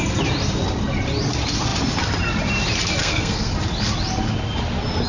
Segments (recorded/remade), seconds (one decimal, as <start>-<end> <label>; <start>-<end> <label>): 0.0-3.0 recorded; 3.0-3.5 remade; 3.5-5.1 recorded

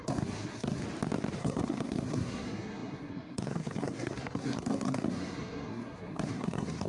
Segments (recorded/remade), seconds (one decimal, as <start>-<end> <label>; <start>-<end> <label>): 0.0-0.8 remade; 0.8-1.4 recorded; 1.4-6.9 remade

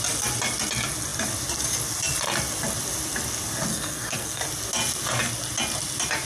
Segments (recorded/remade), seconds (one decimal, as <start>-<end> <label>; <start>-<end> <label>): 0.0-3.7 recorded; 3.7-4.4 remade; 4.4-6.3 recorded

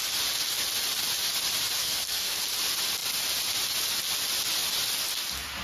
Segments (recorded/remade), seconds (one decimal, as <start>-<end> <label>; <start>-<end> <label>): 0.0-1.8 recorded; 1.8-2.4 remade; 2.4-5.6 recorded